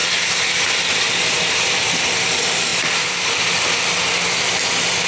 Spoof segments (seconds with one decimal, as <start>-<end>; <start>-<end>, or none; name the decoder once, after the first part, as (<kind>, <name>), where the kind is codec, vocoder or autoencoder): none

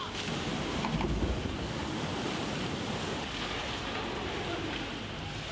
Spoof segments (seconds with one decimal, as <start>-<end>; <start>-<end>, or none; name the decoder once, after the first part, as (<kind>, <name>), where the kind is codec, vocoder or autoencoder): 0.0-0.5 (codec, DAC); 1.1-2.1; 3.0-3.6